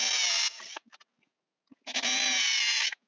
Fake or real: real